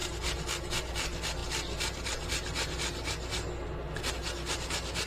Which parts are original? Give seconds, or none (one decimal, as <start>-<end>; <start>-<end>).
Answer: 0.0-5.1